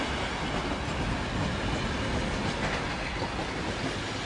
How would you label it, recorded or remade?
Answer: recorded